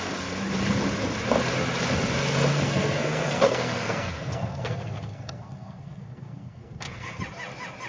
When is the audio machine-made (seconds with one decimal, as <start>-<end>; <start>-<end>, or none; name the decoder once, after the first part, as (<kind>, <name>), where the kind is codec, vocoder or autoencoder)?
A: 2.5-7.2 (codec, SNAC)